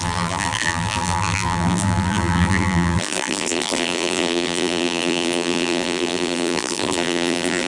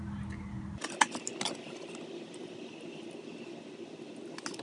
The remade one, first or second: first